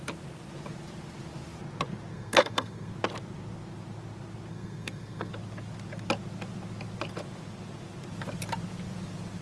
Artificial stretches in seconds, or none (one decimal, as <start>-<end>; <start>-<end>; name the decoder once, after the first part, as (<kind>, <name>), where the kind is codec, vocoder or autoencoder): 2.1-2.9 (codec, SNAC); 4.5-5.3